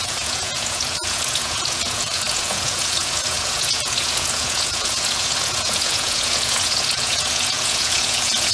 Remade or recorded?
remade